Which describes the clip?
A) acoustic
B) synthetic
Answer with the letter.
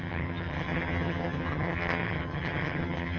B